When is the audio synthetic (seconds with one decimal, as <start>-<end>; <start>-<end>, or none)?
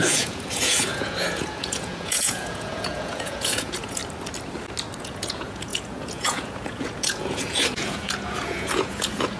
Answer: 0.0-4.0; 5.0-9.4